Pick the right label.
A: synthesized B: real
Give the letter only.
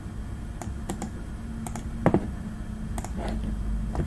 B